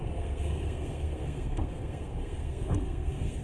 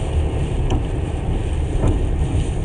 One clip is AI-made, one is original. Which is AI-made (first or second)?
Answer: first